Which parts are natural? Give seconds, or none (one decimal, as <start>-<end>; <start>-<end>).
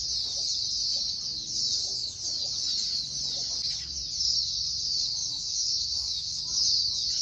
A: 0.0-5.2; 6.4-7.2